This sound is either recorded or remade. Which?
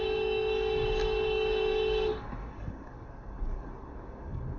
remade